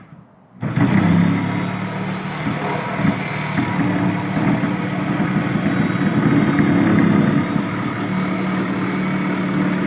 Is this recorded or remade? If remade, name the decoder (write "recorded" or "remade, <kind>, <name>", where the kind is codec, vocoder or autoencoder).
recorded